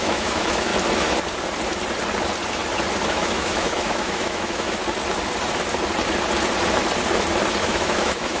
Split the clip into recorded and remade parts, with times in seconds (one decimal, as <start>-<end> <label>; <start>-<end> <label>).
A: 0.0-0.7 remade; 0.7-3.1 recorded; 3.1-4.8 remade; 4.8-7.6 recorded; 7.6-8.4 remade